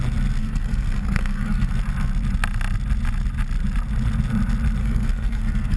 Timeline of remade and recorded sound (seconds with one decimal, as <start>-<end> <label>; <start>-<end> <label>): 0.0-0.4 recorded; 0.4-1.7 remade; 1.7-4.8 recorded; 4.8-5.8 remade